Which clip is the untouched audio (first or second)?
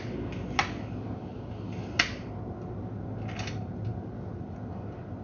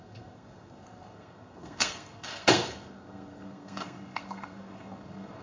first